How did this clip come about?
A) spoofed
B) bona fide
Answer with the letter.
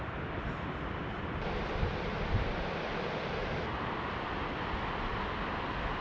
B